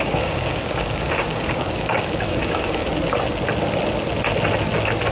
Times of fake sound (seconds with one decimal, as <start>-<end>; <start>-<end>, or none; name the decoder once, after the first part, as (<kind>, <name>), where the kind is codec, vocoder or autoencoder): 0.0-2.8 (codec, DAC)